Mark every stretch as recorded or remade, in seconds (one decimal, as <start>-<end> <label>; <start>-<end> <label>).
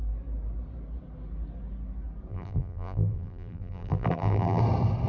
0.0-2.3 recorded; 2.3-4.6 remade; 4.6-5.1 recorded